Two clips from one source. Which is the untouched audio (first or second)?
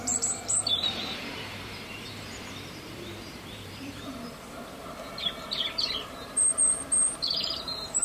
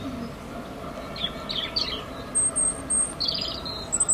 second